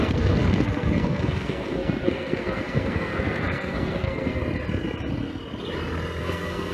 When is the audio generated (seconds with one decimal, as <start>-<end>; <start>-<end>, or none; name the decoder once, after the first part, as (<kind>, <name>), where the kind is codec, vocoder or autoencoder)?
0.0-4.4 (codec, SNAC); 6.2-6.7